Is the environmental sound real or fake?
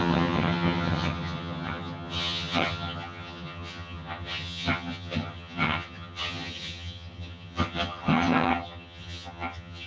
fake